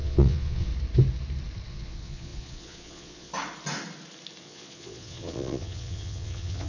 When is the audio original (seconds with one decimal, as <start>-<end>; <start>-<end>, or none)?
0.7-1.7; 3.3-4.4